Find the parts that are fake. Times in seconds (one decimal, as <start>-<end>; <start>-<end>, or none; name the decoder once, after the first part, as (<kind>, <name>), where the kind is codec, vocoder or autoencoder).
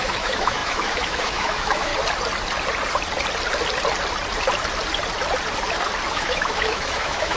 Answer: 0.0-1.9 (autoencoder, DAC-VAE); 6.1-7.4